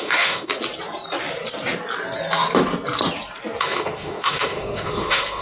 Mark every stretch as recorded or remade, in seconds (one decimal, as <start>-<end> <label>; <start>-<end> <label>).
0.0-0.5 remade; 0.5-3.6 recorded; 3.6-5.4 remade

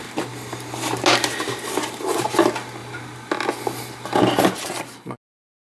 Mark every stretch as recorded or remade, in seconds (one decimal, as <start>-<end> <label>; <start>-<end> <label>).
0.0-5.7 recorded

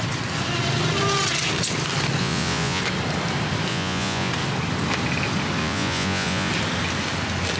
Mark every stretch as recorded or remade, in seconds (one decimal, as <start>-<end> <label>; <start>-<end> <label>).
0.0-2.2 recorded; 2.2-2.8 remade; 2.8-3.7 recorded; 3.7-4.3 remade; 4.3-5.6 recorded; 5.6-6.5 remade; 6.5-7.6 recorded

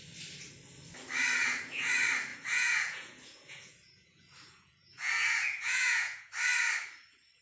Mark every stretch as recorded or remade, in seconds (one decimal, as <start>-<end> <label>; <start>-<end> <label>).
0.0-1.4 recorded; 1.4-1.9 remade; 1.9-2.3 recorded; 2.3-6.3 remade; 6.3-7.4 recorded

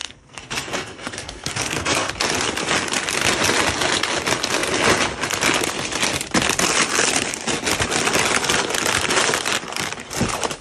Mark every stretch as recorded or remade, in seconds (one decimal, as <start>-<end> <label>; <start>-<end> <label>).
0.0-2.1 remade; 2.1-10.6 recorded

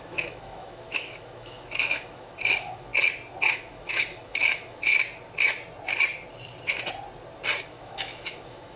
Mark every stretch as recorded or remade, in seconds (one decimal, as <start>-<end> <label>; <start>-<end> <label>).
0.0-2.9 remade; 2.9-3.5 recorded; 3.5-4.9 remade; 4.9-7.6 recorded; 7.6-8.8 remade

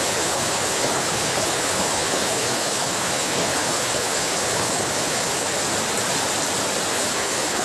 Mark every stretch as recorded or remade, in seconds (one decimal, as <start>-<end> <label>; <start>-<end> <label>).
0.0-5.5 remade; 5.5-6.9 recorded; 6.9-7.6 remade

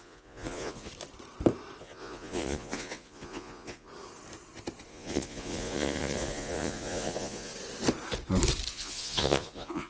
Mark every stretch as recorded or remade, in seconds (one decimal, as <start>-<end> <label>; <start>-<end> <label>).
0.0-0.9 remade; 0.9-1.8 recorded; 1.8-3.9 remade; 3.9-4.9 recorded; 4.9-7.5 remade; 7.5-8.7 recorded; 8.7-9.9 remade